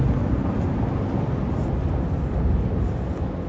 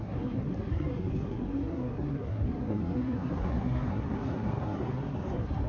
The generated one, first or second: second